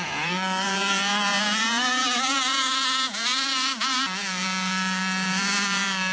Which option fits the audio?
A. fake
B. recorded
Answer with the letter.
A